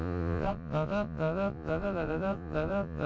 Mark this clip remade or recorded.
remade